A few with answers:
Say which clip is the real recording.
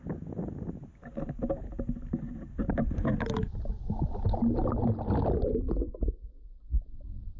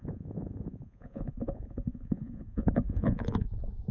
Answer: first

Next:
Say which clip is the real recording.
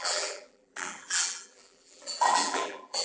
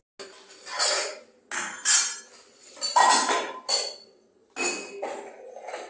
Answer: second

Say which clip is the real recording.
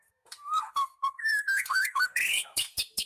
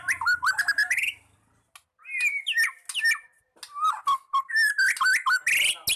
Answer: second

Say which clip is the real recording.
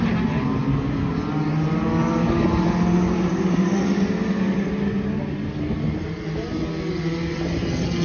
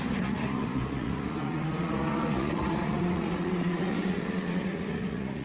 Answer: first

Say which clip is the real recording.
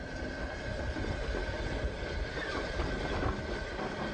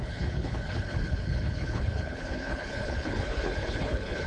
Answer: first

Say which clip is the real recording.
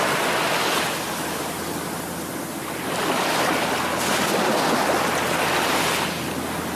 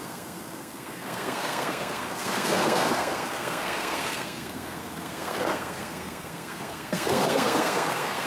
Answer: first